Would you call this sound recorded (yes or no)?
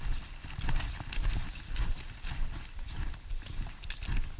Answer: yes